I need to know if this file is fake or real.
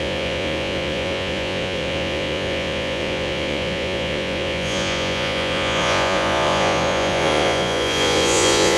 fake